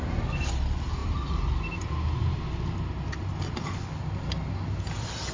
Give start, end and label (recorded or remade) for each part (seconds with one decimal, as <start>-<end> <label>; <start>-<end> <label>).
0.0-5.3 recorded